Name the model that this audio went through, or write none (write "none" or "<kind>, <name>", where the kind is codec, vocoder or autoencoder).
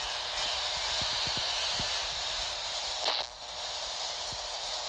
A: none